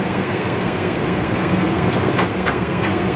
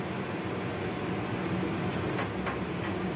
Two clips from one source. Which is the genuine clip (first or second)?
second